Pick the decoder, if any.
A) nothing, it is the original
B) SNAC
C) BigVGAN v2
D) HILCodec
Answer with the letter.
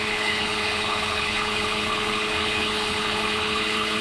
D